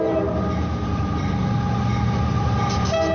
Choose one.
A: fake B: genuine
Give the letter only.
B